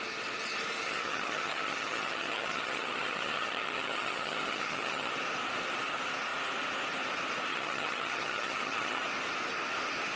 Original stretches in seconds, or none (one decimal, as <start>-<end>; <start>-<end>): 0.0-0.8; 5.1-7.5; 9.0-10.2